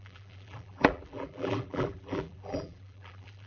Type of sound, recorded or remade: remade